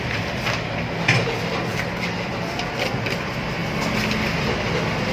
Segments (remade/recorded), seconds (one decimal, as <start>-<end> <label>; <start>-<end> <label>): 0.0-5.1 recorded